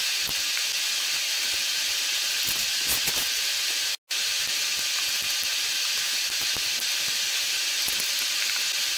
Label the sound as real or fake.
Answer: real